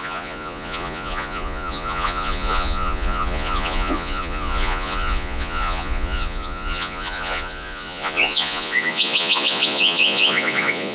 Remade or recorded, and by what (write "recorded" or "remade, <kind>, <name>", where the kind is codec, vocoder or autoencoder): remade, vocoder, Vocos